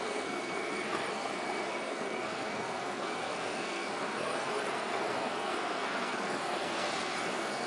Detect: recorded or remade remade